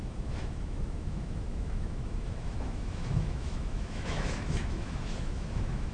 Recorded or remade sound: remade